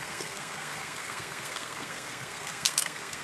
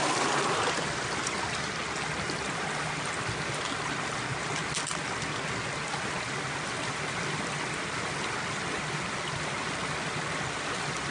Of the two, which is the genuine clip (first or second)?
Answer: second